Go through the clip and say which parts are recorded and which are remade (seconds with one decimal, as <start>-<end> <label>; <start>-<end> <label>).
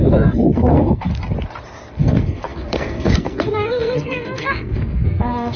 0.0-1.1 remade; 1.1-1.9 recorded; 1.9-5.6 remade